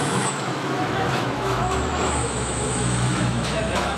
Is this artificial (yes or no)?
yes